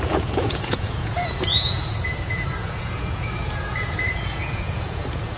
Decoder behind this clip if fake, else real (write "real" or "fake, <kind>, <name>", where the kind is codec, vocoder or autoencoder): fake, vocoder, Vocos